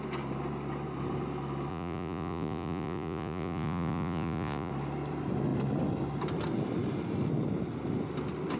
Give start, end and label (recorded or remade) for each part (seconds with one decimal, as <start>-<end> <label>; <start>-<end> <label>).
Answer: 0.0-1.7 recorded; 1.7-4.7 remade; 4.7-8.6 recorded